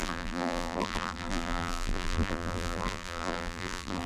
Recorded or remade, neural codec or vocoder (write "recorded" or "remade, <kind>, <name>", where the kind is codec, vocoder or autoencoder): remade, vocoder, BigVGAN v2